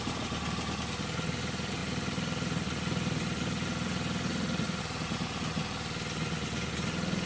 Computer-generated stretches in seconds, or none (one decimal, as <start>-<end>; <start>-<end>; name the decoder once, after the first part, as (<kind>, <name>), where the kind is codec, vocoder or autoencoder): none